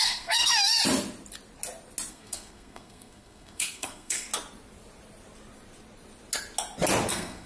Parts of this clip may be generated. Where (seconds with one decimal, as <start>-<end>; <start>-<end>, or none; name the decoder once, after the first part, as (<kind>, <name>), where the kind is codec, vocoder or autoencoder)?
0.0-0.8 (codec, SNAC); 2.1-4.3; 7.1-7.5